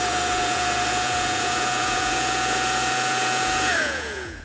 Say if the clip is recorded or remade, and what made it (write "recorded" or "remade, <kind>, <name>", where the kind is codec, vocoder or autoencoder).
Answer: remade, vocoder, Vocos